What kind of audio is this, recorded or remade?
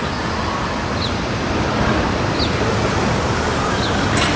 recorded